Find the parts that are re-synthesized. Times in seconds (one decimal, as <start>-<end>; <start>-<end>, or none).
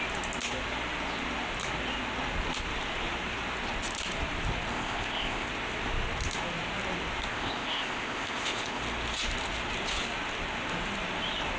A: 4.7-5.5; 7.3-8.8